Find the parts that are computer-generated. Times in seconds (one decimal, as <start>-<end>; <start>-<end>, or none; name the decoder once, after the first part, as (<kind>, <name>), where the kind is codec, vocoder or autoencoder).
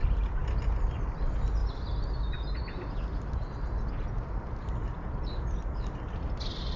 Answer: none